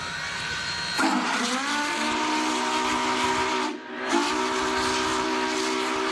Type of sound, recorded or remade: recorded